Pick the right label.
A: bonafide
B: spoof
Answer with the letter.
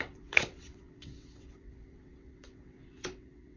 B